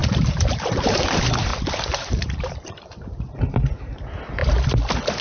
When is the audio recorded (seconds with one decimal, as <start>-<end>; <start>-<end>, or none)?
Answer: 1.1-1.5; 3.5-5.2